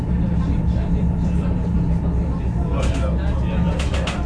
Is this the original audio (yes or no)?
yes